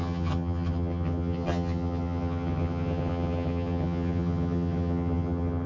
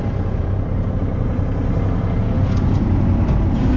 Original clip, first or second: second